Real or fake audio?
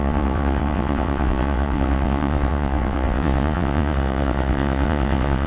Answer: fake